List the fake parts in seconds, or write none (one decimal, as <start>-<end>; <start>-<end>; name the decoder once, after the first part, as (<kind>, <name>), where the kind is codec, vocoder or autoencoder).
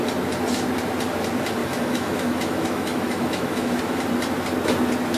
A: 1.6-3.8 (autoencoder, DAC-VAE)